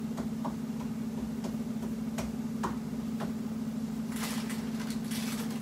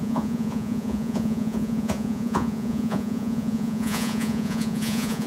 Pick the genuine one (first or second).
first